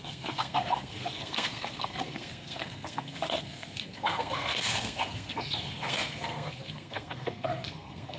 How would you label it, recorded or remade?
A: remade